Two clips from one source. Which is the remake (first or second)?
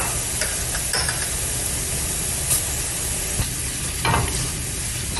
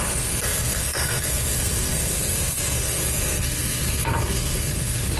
second